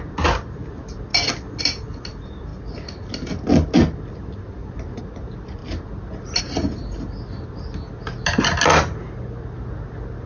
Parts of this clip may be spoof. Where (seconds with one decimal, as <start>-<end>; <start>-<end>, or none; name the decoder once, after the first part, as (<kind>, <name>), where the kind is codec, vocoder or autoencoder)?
none